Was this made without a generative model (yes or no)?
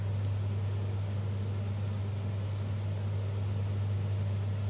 yes